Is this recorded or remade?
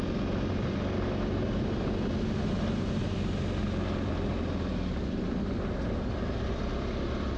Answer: recorded